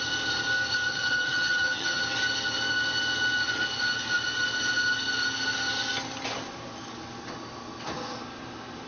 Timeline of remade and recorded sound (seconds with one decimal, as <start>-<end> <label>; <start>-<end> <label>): 0.0-0.9 recorded; 0.9-2.0 remade; 2.0-8.9 recorded

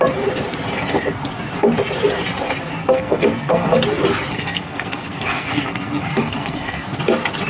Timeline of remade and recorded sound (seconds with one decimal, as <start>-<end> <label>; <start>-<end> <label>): 0.0-2.8 recorded; 2.8-3.7 remade; 3.7-4.3 recorded; 4.3-7.0 remade; 7.0-7.5 recorded